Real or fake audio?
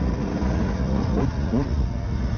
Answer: fake